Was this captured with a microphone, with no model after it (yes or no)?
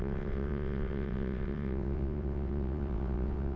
no